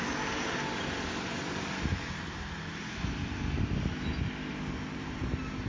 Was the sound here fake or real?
real